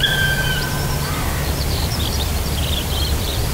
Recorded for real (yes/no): no